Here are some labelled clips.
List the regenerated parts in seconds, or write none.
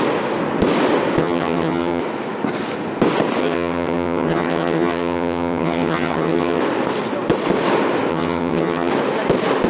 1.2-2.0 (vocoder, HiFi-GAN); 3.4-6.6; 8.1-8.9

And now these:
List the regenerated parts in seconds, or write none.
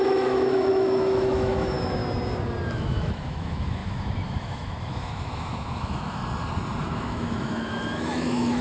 0.0-2.0 (autoencoder, DAC-VAE); 2.7-6.2; 6.8-8.6